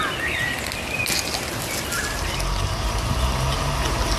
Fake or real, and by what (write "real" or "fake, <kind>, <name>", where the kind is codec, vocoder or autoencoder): real